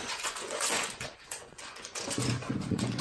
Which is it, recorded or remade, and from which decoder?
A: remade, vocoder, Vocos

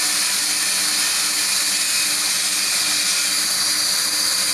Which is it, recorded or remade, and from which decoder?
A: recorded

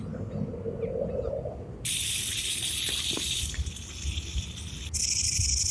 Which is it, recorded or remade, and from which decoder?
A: recorded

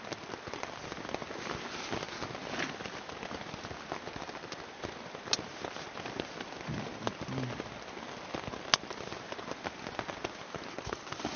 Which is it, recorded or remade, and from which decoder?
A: recorded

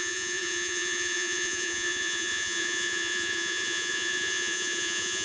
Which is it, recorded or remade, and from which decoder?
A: remade, vocoder, Vocos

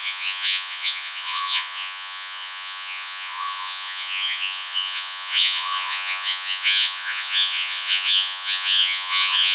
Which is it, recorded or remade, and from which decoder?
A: remade, vocoder, Vocos